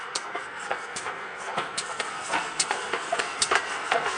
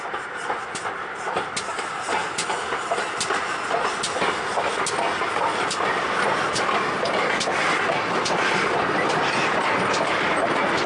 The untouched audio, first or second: second